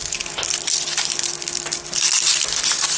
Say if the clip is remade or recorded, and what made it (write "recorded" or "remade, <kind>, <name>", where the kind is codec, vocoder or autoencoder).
recorded